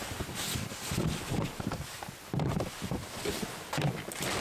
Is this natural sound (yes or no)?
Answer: yes